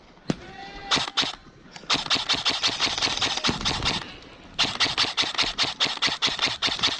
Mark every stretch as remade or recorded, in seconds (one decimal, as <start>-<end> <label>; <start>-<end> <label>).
0.0-7.0 recorded